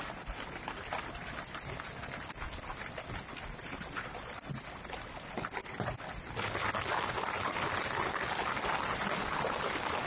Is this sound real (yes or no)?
no